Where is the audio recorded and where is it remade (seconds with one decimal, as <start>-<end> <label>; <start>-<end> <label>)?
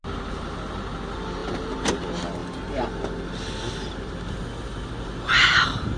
0.0-6.0 recorded